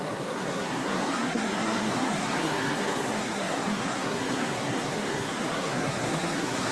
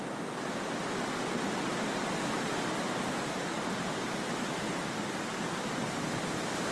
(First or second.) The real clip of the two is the second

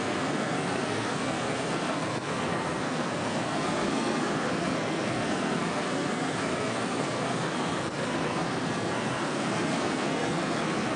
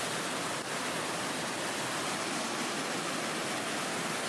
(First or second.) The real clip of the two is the second